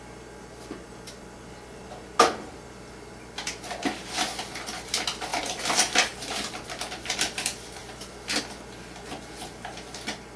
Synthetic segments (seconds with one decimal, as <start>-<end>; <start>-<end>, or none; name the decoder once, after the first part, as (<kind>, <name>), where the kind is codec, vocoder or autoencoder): none